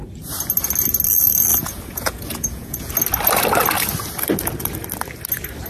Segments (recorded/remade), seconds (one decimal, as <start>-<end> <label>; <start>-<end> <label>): 0.0-1.5 recorded; 1.5-2.9 remade; 2.9-5.7 recorded